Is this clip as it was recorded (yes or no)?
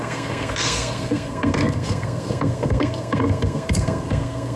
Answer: no